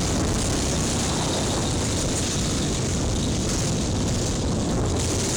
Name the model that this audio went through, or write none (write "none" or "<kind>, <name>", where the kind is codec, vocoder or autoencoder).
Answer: none